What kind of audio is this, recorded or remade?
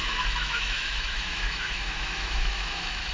remade